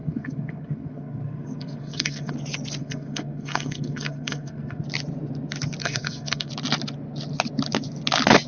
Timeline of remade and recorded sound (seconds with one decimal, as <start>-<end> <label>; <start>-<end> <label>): 0.0-2.3 remade; 2.3-2.8 recorded; 2.8-4.8 remade; 4.8-5.8 recorded; 5.8-6.5 remade; 6.5-8.5 recorded